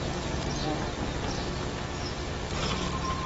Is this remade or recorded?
recorded